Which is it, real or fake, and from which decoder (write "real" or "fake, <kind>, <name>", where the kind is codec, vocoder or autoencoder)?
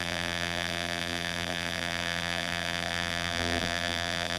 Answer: fake, vocoder, BigVGAN v2